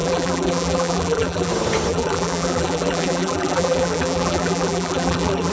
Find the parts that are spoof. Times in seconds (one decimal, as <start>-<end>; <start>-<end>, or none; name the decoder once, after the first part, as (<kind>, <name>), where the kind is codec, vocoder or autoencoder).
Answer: 0.0-1.5 (vocoder, BigVGAN v2); 1.9-5.5

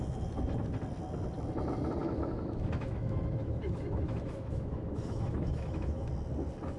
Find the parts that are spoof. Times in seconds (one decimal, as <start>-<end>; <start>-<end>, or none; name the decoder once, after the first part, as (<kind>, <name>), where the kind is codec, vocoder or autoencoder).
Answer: 2.0-6.1 (autoencoder, DAC-VAE)

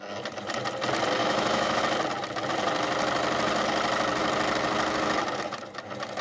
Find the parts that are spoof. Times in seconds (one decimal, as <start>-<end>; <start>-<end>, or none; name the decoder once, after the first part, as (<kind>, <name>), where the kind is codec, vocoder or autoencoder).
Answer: 1.2-1.8 (autoencoder, DAC-VAE)

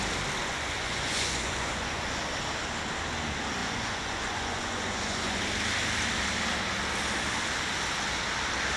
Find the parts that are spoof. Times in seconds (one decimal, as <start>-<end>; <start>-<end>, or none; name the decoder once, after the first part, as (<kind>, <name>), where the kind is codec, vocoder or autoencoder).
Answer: 0.4-2.2 (vocoder, Vocos); 3.6-5.4

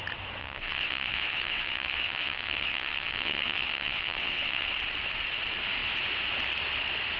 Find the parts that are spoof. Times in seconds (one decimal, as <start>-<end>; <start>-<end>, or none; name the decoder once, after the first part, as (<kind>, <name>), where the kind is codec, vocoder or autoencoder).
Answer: 0.4-4.7 (vocoder, WaveNeXt)

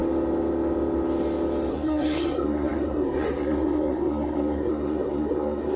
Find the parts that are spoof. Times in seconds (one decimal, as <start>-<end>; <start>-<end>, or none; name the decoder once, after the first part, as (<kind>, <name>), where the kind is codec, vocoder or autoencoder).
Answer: 1.7-5.8 (codec, SNAC)